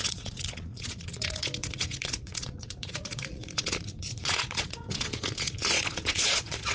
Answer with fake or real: fake